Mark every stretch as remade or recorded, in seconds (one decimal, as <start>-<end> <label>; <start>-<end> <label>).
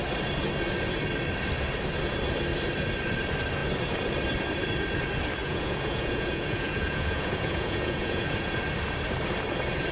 0.0-5.4 recorded; 5.4-8.6 remade; 8.6-9.9 recorded